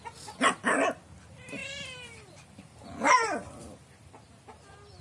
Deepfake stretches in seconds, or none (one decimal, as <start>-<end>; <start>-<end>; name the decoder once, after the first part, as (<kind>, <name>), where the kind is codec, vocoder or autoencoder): 1.6-4.1 (vocoder, BigVGAN v2)